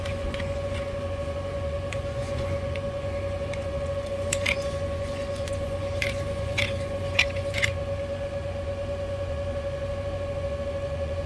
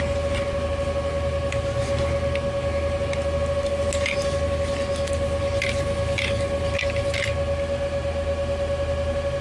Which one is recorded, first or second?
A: second